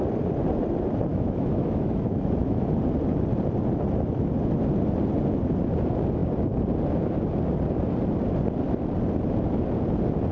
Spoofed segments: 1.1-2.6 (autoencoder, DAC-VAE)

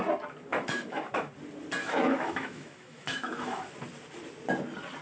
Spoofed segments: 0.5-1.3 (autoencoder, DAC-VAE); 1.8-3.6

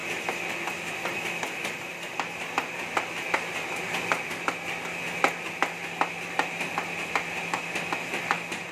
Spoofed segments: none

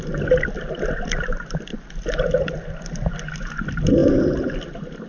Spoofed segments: none

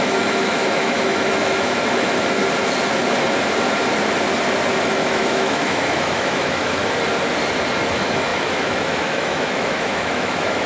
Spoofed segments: 0.0-2.4 (autoencoder, DAC-VAE); 4.8-6.8; 7.9-10.7

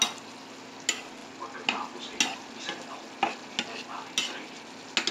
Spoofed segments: none

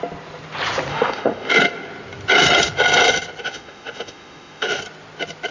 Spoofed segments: 0.9-1.5 (autoencoder, DAC-VAE); 3.4-4.8

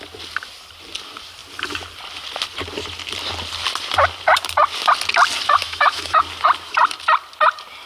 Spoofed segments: 5.6-6.2 (autoencoder, DAC-VAE)